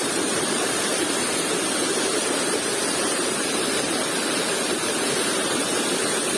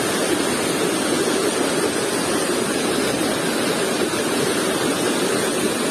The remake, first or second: first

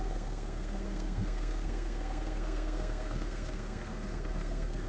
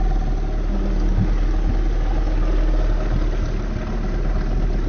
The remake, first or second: first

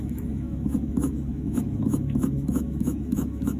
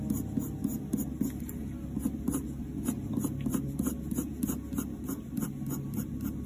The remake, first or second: first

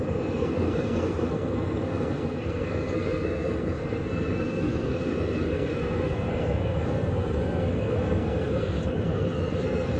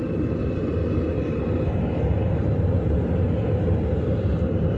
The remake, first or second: first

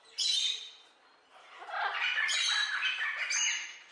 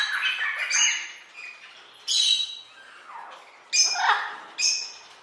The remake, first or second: first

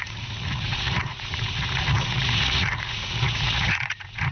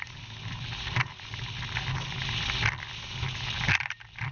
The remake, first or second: first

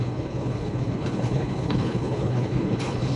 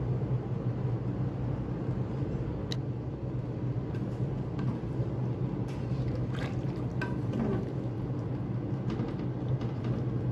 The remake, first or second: first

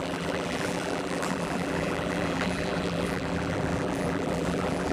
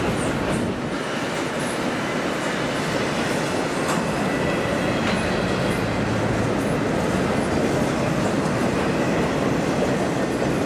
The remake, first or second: first